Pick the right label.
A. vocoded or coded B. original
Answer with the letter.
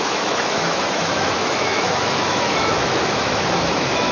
A